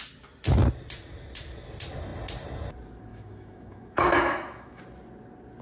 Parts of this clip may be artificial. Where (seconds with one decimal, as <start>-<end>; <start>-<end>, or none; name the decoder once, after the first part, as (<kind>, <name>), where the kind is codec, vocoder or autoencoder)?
3.1-4.8 (autoencoder, DAC-VAE)